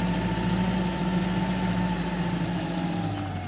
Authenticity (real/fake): real